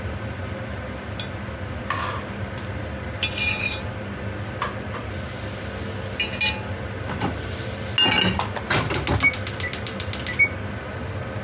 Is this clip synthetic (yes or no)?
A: no